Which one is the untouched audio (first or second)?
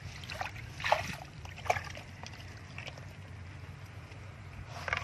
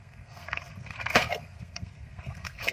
first